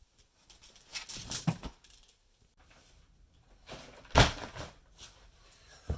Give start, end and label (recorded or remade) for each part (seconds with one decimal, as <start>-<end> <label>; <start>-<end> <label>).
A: 0.0-6.0 recorded